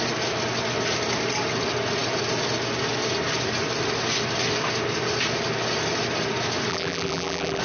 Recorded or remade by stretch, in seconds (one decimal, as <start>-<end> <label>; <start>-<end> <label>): 0.0-6.7 recorded; 6.7-7.6 remade